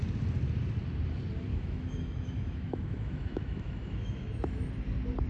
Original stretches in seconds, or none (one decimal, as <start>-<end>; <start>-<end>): 0.0-1.5; 4.7-5.3